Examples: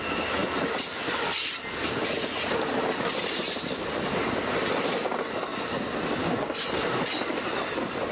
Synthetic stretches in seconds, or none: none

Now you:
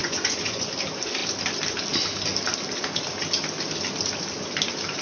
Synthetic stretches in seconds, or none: 0.0-0.7

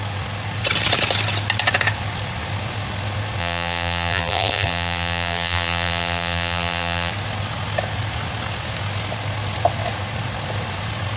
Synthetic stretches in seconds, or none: 3.4-7.1

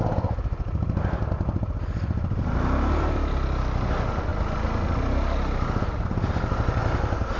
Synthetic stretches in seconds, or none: none

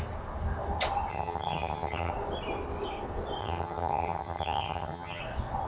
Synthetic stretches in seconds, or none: 1.1-2.1; 3.4-5.2

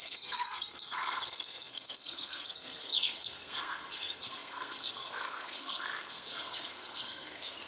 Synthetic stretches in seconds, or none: 0.0-7.7

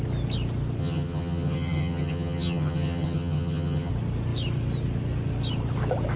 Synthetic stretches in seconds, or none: 0.8-3.9

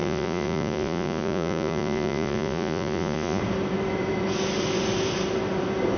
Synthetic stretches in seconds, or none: 0.0-3.4